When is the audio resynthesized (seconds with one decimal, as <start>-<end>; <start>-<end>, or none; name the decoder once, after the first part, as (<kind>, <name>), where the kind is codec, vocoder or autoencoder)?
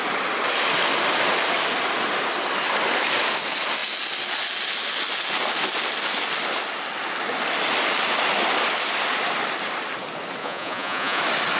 10.4-11.2 (vocoder, Vocos)